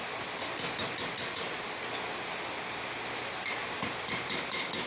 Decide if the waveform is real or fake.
real